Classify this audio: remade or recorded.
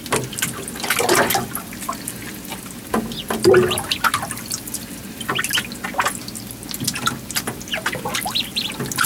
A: recorded